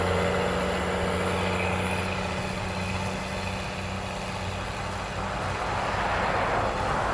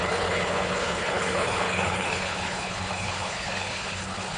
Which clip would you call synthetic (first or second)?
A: second